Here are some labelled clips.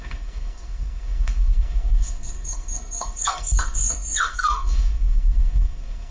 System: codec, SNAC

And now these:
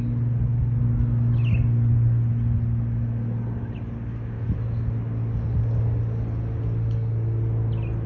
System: none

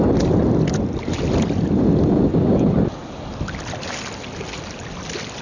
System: none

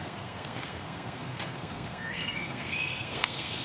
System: codec, SNAC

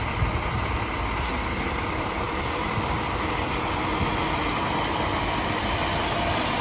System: none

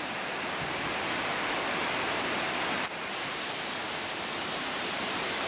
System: none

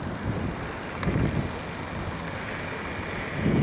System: none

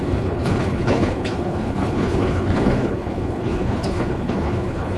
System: codec, HILCodec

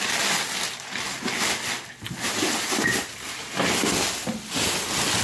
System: none